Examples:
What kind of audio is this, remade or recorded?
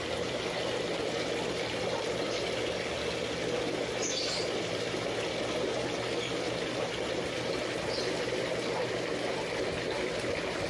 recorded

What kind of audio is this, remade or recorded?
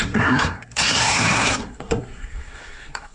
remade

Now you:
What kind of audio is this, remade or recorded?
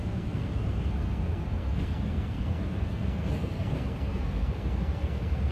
remade